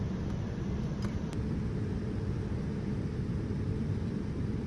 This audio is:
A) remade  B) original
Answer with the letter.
A